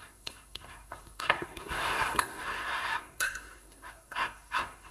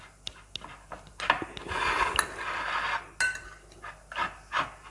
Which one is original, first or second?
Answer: second